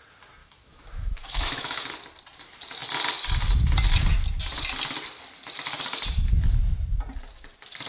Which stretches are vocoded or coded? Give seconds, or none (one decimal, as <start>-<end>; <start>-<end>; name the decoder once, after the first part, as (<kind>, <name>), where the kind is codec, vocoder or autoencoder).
0.4-1.9 (autoencoder, DAC-VAE)